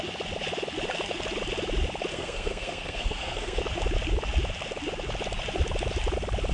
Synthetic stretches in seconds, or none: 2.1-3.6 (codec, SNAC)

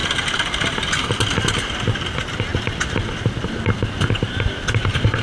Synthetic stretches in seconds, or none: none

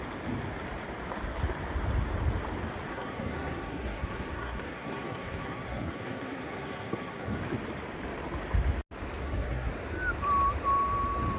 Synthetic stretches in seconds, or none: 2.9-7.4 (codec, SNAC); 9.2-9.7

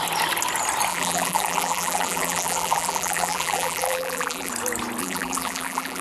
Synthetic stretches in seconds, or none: 0.9-4.5 (vocoder, BigVGAN v2); 5.0-6.0

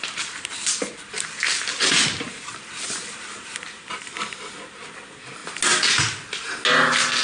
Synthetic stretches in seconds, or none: none

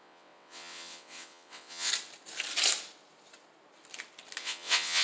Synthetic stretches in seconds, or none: 0.0-1.9 (vocoder, WaveNeXt); 4.4-5.0

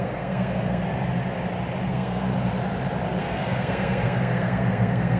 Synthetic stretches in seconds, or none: 0.0-0.8 (codec, SNAC); 1.9-2.3; 3.2-5.2